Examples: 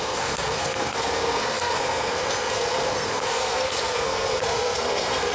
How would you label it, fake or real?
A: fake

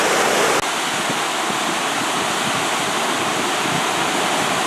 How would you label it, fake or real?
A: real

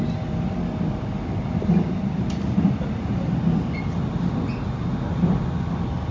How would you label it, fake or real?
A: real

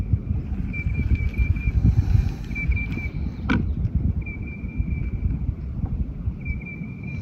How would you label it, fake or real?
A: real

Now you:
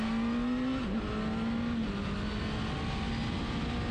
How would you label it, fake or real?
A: real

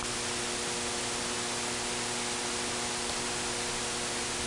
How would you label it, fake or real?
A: real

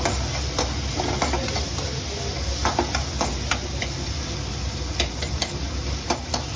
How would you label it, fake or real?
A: real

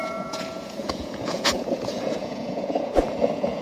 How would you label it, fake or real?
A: fake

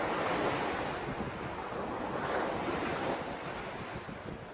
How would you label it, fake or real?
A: real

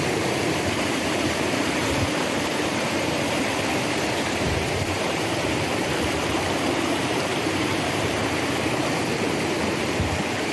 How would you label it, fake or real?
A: fake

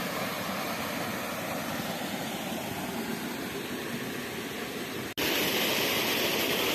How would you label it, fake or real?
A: real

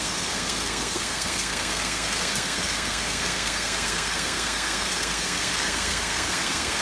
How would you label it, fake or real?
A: fake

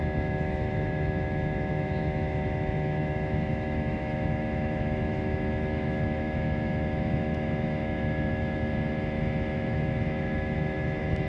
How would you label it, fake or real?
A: fake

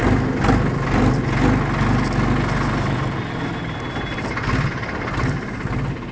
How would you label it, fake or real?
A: real